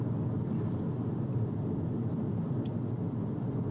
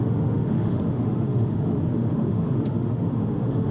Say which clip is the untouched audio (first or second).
first